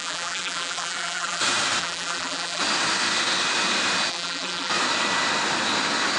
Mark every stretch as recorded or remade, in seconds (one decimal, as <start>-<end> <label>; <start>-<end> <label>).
0.0-1.4 remade; 1.4-1.8 recorded; 1.8-2.6 remade; 2.6-4.1 recorded; 4.1-4.7 remade; 4.7-6.2 recorded